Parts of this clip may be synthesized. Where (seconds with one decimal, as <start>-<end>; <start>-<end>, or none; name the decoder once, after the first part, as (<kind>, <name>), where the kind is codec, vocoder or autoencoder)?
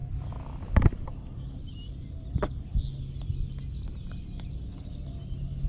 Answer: none